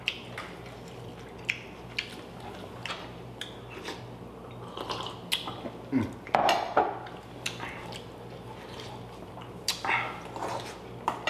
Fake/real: real